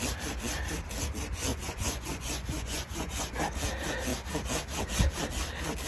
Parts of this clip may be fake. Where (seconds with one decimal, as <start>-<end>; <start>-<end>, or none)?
1.5-3.4